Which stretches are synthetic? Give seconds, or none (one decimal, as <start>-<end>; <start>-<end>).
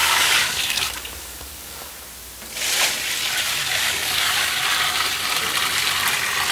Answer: 0.0-1.9; 3.6-4.6